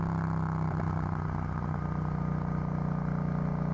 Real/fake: real